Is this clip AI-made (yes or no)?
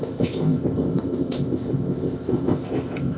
yes